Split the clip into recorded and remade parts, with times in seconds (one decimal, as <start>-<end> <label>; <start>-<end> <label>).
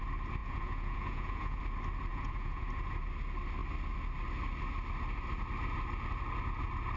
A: 0.0-0.4 recorded; 0.4-1.6 remade; 1.6-2.1 recorded; 2.1-2.7 remade; 2.7-7.0 recorded